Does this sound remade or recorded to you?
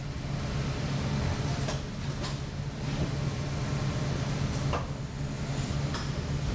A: recorded